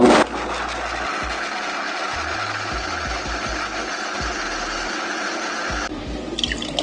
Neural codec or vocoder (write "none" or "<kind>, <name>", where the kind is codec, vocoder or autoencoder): none